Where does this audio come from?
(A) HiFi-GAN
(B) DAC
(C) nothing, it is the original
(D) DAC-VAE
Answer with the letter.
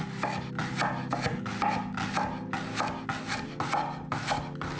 C